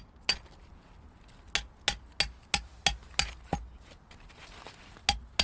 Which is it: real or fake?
real